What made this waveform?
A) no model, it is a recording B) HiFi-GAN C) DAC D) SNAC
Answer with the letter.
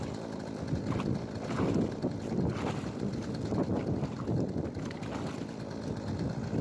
A